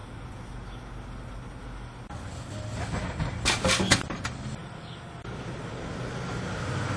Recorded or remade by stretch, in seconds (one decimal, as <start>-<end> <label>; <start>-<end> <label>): 0.0-7.0 recorded